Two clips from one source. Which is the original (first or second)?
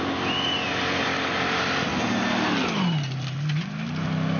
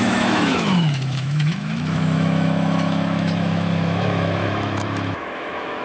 first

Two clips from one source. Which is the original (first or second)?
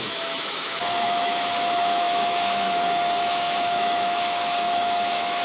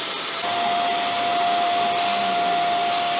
second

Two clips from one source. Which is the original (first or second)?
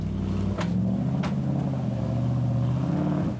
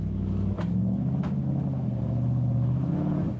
first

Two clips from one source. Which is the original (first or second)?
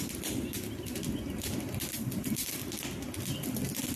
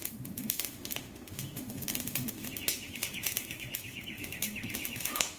first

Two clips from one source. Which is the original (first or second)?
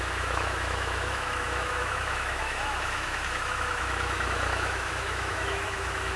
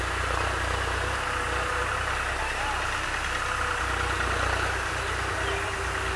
second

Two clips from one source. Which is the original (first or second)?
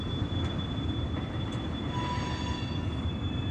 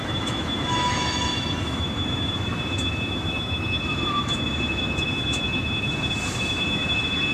first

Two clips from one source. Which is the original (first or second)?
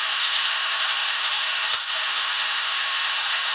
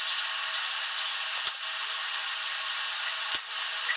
second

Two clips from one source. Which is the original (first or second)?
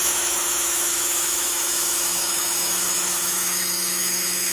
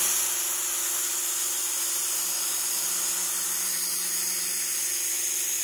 second